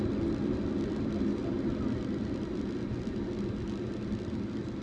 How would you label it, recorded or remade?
recorded